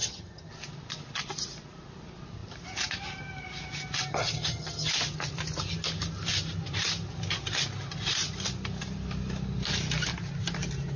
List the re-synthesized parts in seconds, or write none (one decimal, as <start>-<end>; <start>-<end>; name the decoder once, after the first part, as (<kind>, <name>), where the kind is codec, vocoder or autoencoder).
0.0-0.5 (vocoder, HiFi-GAN); 4.1-4.9